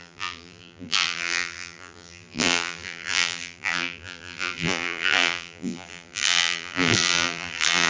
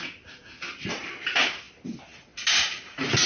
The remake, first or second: first